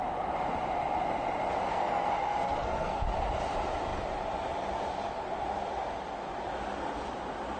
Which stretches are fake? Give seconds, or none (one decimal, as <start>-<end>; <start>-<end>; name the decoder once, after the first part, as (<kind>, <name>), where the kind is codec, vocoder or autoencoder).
1.7-3.0 (codec, SNAC)